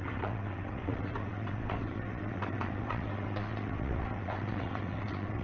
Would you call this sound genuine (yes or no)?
no